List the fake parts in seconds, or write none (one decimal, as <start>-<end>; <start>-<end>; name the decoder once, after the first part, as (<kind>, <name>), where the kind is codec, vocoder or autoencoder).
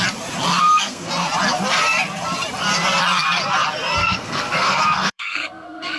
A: 0.6-1.1 (codec, SNAC); 4.0-6.0